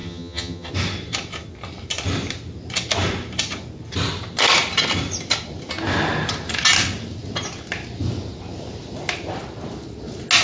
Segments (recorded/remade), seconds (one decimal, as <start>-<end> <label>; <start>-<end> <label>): 0.0-0.7 remade; 0.7-10.4 recorded